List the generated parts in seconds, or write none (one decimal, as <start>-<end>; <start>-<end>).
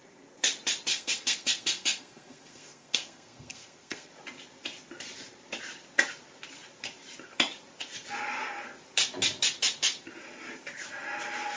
0.9-4.1